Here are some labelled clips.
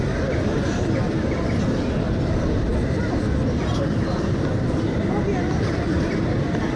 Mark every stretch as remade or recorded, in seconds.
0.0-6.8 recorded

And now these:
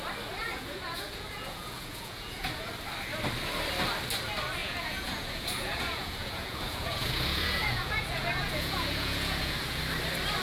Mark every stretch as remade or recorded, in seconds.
0.0-0.4 recorded; 0.4-2.7 remade; 2.7-4.6 recorded; 4.6-9.8 remade; 9.8-10.4 recorded

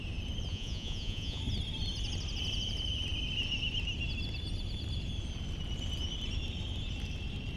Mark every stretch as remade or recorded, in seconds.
0.0-0.5 recorded; 0.5-1.4 remade; 1.4-7.6 recorded